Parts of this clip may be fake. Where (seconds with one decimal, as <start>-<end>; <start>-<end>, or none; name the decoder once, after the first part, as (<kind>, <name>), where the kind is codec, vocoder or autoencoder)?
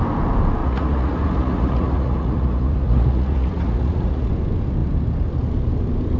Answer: 0.6-4.3 (vocoder, Vocos)